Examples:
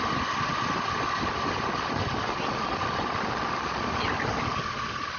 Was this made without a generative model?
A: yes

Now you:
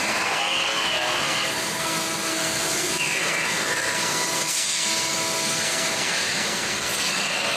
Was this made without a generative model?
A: no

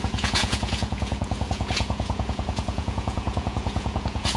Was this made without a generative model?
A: no